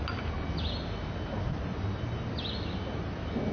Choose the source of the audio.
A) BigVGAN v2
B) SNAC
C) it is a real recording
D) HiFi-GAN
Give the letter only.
C